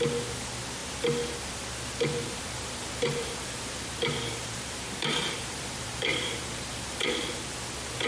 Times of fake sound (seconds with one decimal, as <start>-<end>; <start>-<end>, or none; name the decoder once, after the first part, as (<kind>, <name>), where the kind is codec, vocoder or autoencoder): 2.1-6.8 (vocoder, BigVGAN v2)